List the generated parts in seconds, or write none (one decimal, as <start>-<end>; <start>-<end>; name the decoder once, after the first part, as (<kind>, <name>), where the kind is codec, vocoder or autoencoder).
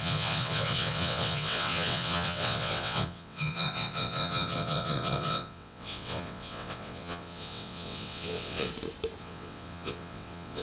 0.0-8.7 (vocoder, WaveNeXt); 9.2-10.6